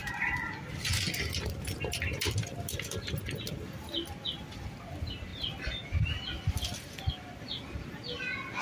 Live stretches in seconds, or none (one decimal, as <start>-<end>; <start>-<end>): 0.0-8.6